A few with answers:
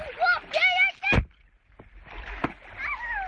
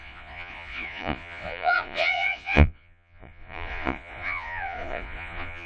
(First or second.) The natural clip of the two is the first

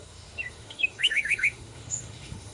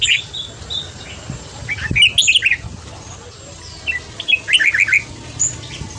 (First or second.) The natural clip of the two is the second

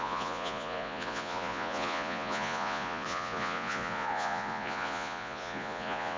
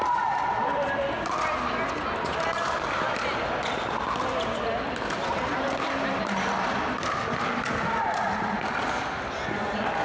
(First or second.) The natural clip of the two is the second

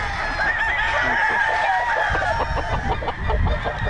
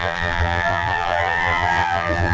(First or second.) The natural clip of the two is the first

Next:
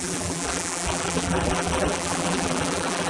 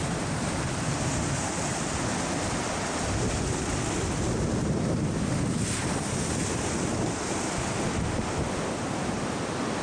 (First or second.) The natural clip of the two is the second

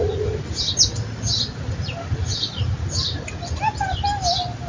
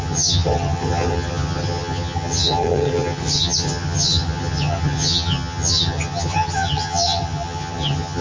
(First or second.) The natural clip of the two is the first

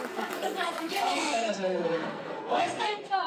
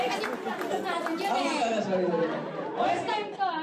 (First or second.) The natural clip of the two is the second